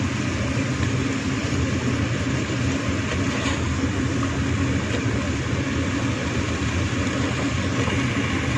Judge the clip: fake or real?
real